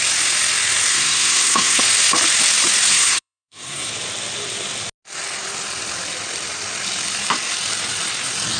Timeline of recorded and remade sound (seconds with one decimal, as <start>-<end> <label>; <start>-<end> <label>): 0.0-0.9 recorded; 0.9-1.8 remade; 1.8-2.9 recorded; 2.9-3.9 remade; 3.9-8.6 recorded